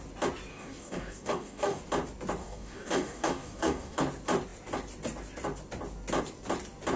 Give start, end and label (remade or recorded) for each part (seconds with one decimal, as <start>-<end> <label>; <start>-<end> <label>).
0.0-0.5 recorded; 0.5-1.8 remade; 1.8-2.4 recorded; 2.4-4.0 remade; 4.0-7.0 recorded